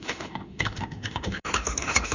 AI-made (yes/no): yes